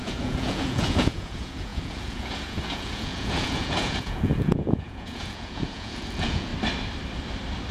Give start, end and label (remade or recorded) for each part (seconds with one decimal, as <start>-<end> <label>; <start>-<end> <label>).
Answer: 0.0-6.5 remade; 6.5-7.7 recorded